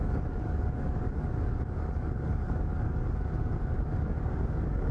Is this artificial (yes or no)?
yes